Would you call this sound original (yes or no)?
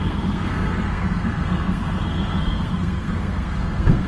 no